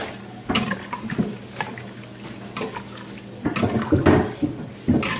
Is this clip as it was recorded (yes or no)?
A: yes